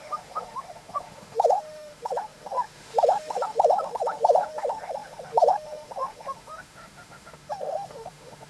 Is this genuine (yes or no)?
no